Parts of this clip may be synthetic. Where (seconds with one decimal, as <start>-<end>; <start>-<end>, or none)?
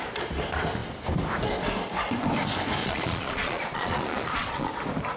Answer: 2.8-4.7